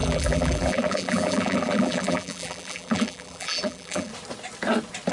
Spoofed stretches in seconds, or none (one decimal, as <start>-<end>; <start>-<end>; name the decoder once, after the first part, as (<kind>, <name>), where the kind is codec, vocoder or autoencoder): 0.0-4.1 (vocoder, BigVGAN v2)